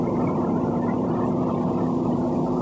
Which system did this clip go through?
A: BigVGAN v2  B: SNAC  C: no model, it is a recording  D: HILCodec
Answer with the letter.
A